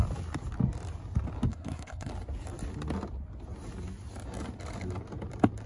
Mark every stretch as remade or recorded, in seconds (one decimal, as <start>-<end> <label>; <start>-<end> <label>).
0.0-1.5 recorded; 1.5-2.1 remade; 2.1-5.7 recorded